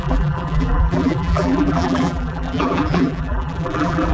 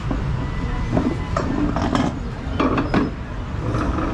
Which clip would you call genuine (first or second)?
second